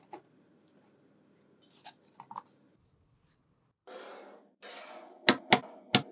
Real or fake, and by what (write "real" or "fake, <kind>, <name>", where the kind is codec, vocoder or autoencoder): real